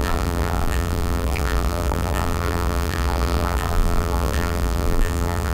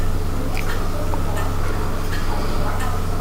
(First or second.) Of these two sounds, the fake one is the first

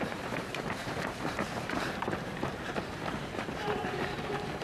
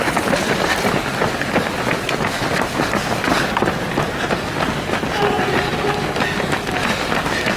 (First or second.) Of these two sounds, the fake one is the first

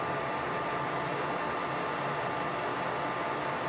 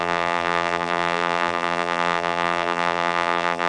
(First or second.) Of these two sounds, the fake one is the second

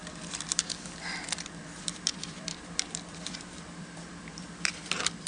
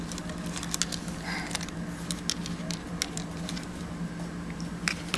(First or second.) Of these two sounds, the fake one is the first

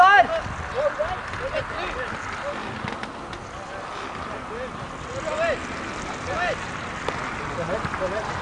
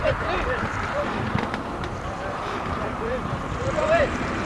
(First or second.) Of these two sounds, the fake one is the second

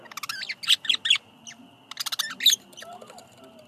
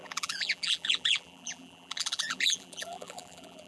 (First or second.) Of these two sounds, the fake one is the second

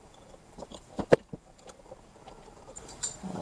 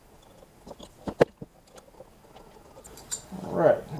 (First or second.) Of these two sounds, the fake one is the first